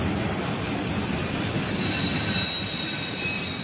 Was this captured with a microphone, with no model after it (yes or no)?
yes